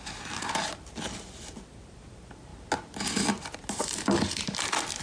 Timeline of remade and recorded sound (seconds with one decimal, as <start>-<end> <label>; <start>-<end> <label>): 0.0-5.0 recorded